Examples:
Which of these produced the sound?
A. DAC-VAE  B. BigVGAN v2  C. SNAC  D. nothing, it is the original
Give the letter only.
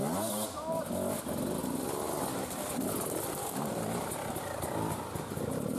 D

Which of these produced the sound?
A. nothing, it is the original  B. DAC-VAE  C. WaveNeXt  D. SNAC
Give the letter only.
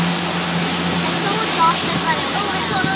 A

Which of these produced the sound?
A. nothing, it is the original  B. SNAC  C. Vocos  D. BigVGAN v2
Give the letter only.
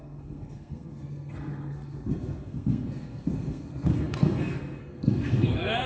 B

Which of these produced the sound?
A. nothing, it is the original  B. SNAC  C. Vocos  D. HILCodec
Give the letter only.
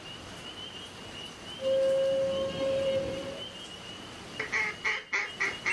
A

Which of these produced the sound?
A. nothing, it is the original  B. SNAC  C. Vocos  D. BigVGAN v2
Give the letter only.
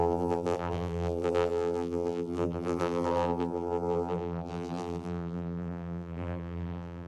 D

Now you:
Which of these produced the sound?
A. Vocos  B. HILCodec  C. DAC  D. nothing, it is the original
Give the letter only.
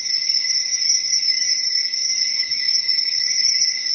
C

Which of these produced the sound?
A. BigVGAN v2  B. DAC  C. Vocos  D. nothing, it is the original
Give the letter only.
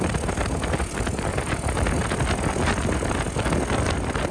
D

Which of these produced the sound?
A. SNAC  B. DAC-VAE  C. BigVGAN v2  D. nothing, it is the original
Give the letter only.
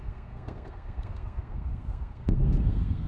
A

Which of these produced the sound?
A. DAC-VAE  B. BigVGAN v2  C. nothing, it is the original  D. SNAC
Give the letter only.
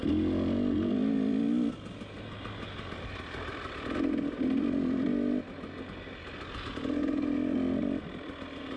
C